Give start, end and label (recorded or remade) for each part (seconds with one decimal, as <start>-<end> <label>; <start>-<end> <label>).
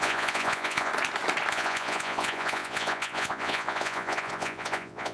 0.0-0.9 remade; 0.9-1.5 recorded; 1.5-5.1 remade